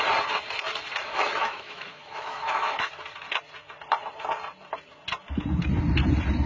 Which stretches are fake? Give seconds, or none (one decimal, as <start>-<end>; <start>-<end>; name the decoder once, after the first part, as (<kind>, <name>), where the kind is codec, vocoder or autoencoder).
1.0-2.9 (autoencoder, DAC-VAE)